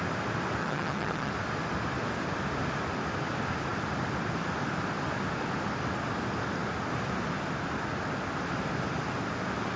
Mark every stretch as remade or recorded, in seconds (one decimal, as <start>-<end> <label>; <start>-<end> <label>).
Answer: 0.0-0.6 recorded; 0.6-1.3 remade; 1.3-9.8 recorded